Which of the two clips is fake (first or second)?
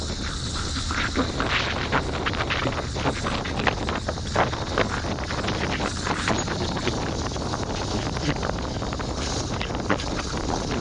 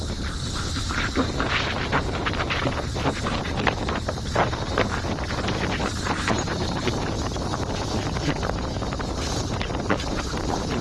second